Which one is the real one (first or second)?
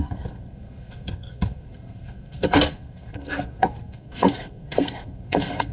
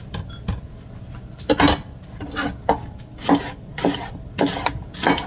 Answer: second